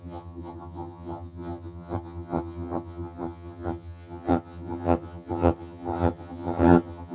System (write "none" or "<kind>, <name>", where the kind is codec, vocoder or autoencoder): vocoder, HiFi-GAN